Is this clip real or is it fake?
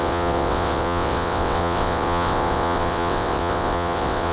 fake